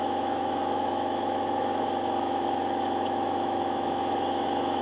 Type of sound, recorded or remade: remade